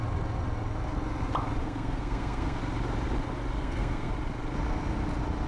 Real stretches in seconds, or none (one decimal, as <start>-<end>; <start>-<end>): 0.0-1.6; 2.6-3.6; 4.1-5.5

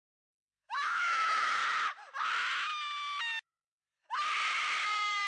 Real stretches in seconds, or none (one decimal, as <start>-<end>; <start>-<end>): 1.6-4.8

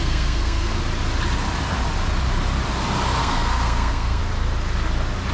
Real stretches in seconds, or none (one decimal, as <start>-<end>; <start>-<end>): 0.8-3.2; 4.2-5.3

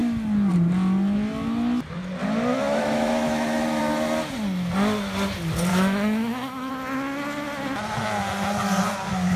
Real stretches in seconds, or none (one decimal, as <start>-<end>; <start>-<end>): 0.0-2.5; 3.8-5.7; 6.7-9.4